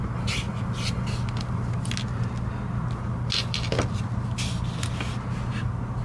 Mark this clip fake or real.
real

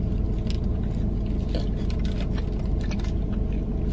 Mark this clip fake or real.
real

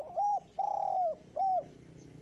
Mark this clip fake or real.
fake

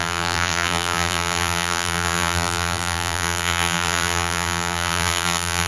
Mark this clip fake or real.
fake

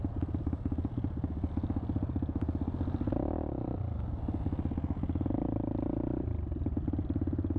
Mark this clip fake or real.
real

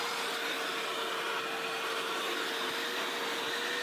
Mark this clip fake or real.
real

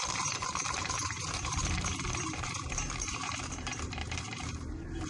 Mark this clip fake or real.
fake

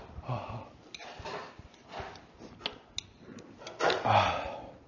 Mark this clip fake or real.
real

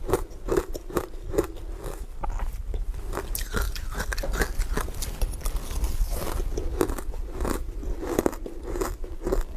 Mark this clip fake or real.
real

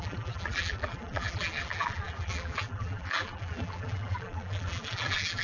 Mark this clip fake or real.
fake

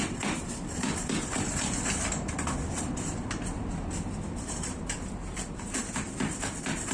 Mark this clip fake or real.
fake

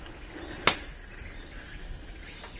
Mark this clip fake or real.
real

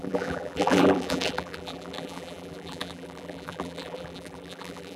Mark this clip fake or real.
fake